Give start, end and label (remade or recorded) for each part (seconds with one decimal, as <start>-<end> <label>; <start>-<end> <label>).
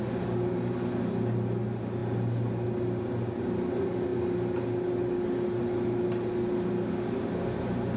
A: 0.0-8.0 recorded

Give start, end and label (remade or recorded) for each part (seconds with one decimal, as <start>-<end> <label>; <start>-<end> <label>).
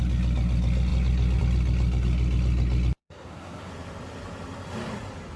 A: 0.0-3.0 recorded; 3.0-3.7 remade; 3.7-5.4 recorded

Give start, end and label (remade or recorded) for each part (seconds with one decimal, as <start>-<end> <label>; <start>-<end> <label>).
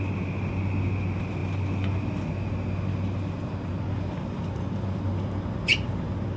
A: 0.0-3.7 recorded; 3.7-6.4 remade